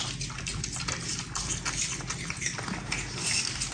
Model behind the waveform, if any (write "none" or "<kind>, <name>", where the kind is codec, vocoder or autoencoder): none